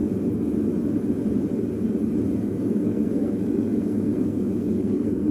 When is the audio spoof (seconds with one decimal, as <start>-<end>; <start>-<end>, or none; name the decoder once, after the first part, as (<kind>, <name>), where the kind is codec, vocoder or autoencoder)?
2.4-5.3 (codec, SNAC)